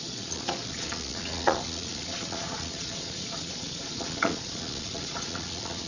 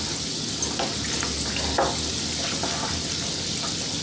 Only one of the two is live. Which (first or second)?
second